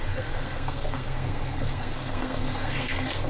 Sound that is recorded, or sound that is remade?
remade